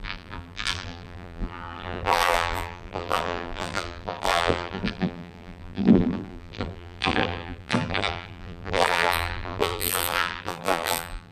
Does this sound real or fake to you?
fake